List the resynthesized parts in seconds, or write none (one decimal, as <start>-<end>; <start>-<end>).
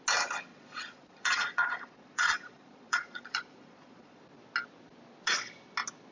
0.5-4.2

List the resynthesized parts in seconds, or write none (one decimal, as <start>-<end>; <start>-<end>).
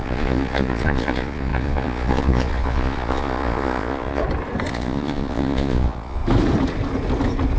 0.0-4.2; 4.7-6.2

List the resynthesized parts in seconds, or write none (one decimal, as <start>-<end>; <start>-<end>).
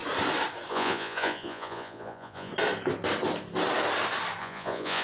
0.7-2.5; 4.4-5.0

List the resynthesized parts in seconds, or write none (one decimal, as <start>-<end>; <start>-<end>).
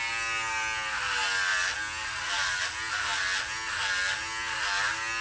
none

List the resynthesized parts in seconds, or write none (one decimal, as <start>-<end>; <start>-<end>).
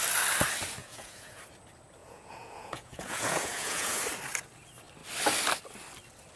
0.8-1.4; 2.0-4.0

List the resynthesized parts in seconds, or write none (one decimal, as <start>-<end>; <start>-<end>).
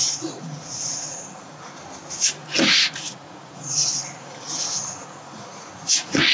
0.0-1.8; 2.4-6.3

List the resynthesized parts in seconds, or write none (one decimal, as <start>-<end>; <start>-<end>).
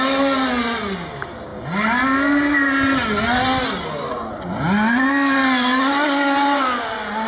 none